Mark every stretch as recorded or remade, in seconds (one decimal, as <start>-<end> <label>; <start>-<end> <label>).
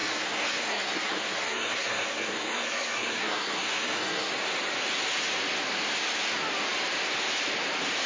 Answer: 0.0-4.3 remade; 4.3-8.1 recorded